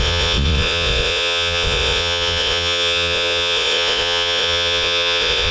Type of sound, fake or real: fake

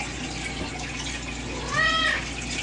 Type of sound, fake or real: real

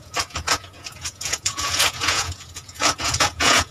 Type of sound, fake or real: fake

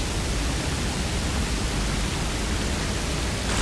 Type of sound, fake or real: real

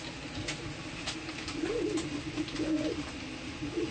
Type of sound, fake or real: real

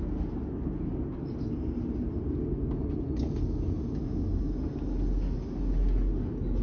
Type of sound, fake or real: real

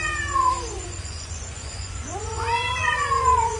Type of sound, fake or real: fake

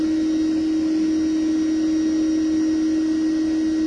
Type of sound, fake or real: real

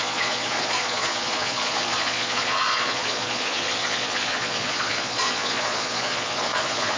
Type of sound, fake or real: fake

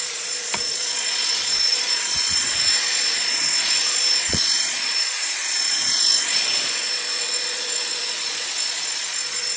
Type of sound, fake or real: fake